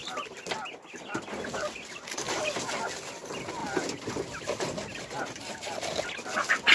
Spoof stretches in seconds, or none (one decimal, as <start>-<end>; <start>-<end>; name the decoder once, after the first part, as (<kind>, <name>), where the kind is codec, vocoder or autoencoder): 0.0-1.3 (vocoder, BigVGAN v2); 3.6-4.2; 4.9-6.0